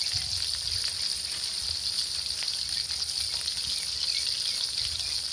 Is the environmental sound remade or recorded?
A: recorded